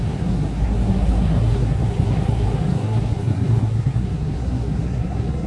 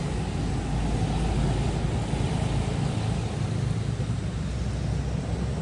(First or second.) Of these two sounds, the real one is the second